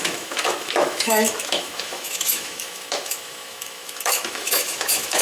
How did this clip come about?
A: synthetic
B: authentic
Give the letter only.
A